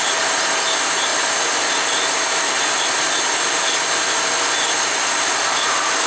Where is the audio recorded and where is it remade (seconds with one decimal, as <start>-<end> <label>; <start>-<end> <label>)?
0.0-6.1 recorded